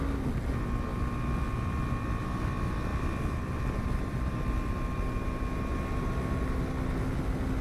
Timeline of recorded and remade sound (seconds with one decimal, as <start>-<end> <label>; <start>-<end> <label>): 0.0-0.9 recorded; 0.9-2.5 remade; 2.5-2.9 recorded; 2.9-6.0 remade; 6.0-7.6 recorded